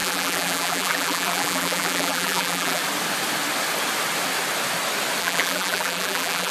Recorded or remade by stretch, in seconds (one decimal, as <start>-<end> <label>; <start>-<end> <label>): 0.0-2.8 remade; 2.8-5.2 recorded; 5.2-6.5 remade

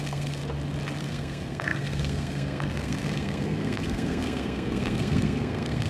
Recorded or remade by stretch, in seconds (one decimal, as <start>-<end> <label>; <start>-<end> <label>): 0.0-0.4 remade; 0.4-1.0 recorded; 1.0-5.9 remade

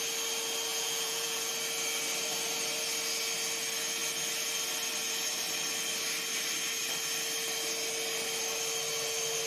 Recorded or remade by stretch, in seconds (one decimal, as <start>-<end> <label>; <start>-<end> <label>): 0.0-0.7 recorded; 0.7-1.5 remade; 1.5-9.5 recorded

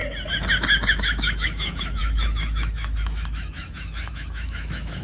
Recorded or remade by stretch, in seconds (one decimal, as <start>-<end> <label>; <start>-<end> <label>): 0.0-0.9 recorded; 0.9-5.0 remade

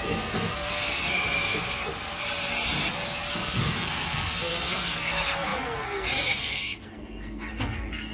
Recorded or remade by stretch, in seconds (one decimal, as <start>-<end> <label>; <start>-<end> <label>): 0.0-1.9 remade; 1.9-3.3 recorded; 3.3-8.1 remade